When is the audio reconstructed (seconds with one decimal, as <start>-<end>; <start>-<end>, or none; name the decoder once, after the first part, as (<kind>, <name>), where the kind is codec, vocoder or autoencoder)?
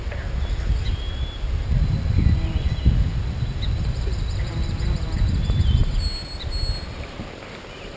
none